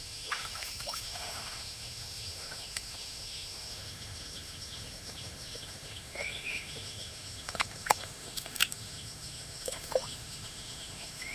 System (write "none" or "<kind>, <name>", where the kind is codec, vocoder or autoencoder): autoencoder, DAC-VAE